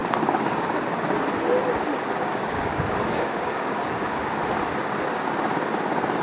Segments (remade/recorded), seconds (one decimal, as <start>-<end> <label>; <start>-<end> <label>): 0.0-1.0 remade; 1.0-2.3 recorded; 2.3-4.3 remade; 4.3-6.2 recorded